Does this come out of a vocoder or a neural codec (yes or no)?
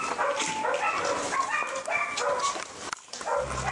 no